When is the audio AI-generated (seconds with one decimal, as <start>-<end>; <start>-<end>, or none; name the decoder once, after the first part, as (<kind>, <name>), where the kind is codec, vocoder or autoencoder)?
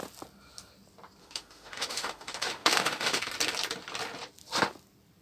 1.2-3.3 (autoencoder, DAC-VAE)